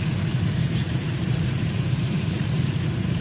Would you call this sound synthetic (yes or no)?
yes